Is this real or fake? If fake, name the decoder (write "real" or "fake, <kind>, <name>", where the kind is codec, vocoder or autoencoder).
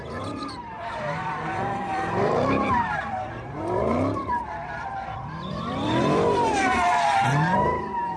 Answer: fake, vocoder, BigVGAN v2